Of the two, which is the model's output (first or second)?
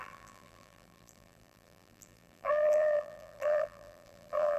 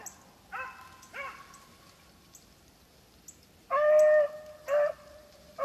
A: first